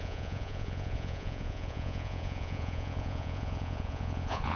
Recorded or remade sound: remade